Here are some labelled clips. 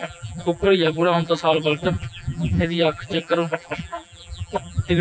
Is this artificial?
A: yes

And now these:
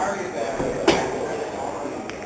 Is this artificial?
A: no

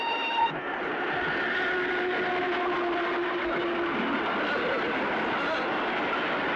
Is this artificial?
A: no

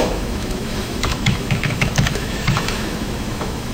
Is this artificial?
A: yes